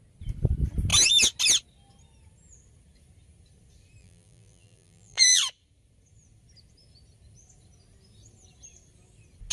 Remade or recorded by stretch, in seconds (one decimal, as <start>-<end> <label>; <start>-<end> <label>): 0.0-4.0 recorded; 4.0-5.4 remade; 5.4-9.5 recorded